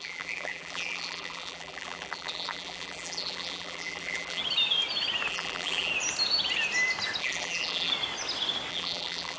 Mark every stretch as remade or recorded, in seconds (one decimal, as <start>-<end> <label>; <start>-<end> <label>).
0.0-4.4 remade; 4.4-5.3 recorded; 5.3-5.9 remade; 5.9-7.2 recorded; 7.2-7.9 remade; 7.9-8.7 recorded; 8.7-9.4 remade

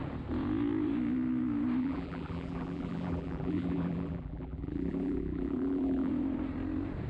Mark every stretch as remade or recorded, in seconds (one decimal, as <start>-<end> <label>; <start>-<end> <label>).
0.0-1.8 recorded; 1.8-6.1 remade; 6.1-7.1 recorded